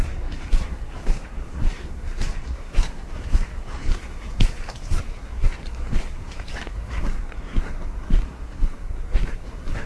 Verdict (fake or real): fake